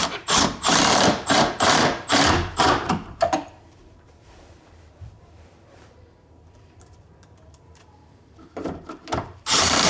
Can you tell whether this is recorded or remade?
remade